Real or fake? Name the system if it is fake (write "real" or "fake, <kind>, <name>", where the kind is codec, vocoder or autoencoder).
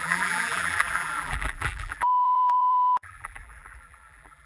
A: fake, vocoder, BigVGAN v2